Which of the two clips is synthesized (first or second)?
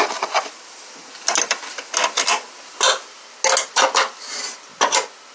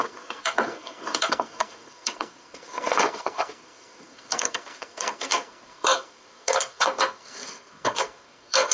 second